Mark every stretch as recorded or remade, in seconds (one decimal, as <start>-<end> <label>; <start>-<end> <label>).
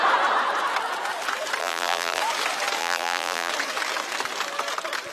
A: 0.0-1.6 recorded; 1.6-2.2 remade; 2.2-2.8 recorded; 2.8-3.5 remade; 3.5-5.1 recorded